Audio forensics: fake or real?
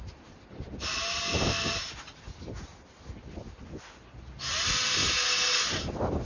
real